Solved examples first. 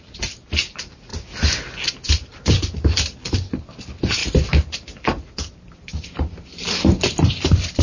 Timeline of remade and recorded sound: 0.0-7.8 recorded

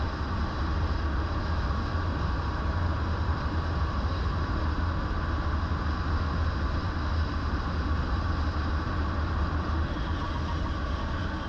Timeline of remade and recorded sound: 0.0-1.9 recorded; 1.9-3.6 remade; 3.6-11.5 recorded

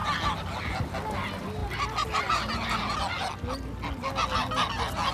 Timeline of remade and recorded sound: 0.0-5.1 recorded

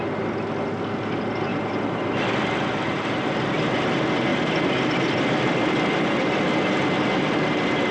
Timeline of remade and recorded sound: 0.0-1.5 recorded; 1.5-3.6 remade; 3.6-4.3 recorded; 4.3-7.9 remade

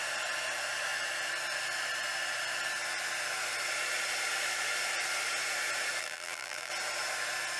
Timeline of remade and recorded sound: 0.0-6.0 recorded; 6.0-6.7 remade; 6.7-7.6 recorded

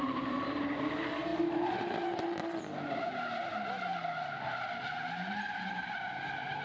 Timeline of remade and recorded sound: 0.0-1.3 remade; 1.3-4.7 recorded; 4.7-6.6 remade

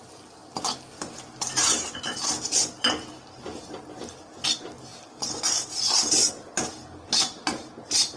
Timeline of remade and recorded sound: 0.0-8.2 recorded

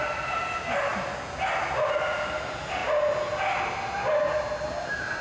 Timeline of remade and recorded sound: 0.0-5.2 recorded